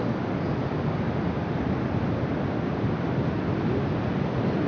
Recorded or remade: recorded